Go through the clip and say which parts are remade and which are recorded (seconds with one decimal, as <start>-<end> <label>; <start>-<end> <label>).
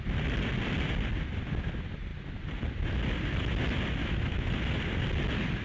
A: 0.0-4.0 recorded; 4.0-4.5 remade; 4.5-5.6 recorded